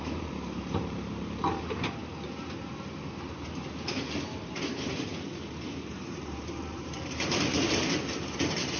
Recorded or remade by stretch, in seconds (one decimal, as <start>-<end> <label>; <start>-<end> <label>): 0.0-5.1 remade; 5.1-5.9 recorded; 5.9-8.8 remade